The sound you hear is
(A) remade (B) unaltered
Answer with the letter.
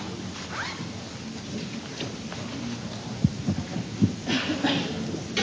B